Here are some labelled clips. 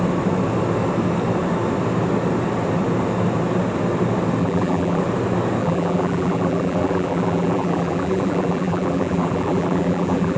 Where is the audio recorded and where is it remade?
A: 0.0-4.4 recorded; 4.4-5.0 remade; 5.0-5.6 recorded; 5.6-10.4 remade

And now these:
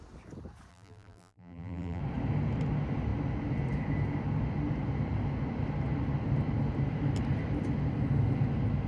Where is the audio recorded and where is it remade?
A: 0.0-0.7 recorded; 0.7-2.0 remade; 2.0-8.9 recorded

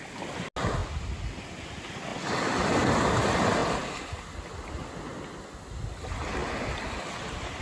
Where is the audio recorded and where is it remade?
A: 0.0-7.6 recorded

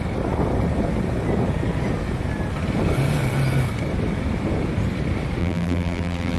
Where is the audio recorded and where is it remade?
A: 0.0-5.4 recorded; 5.4-6.4 remade

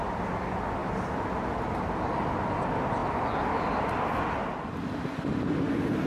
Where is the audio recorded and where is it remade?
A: 0.0-6.1 recorded

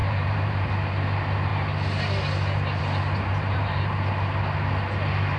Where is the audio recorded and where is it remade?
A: 0.0-0.7 remade; 0.7-3.3 recorded; 3.3-4.1 remade; 4.1-5.4 recorded

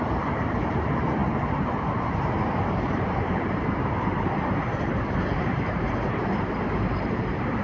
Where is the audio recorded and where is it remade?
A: 0.0-7.6 remade

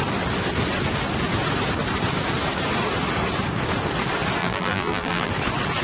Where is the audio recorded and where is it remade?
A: 0.0-4.4 recorded; 4.4-5.3 remade; 5.3-5.8 recorded